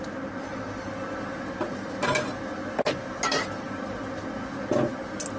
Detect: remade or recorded recorded